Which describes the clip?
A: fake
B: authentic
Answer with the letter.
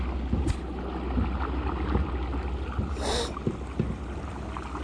B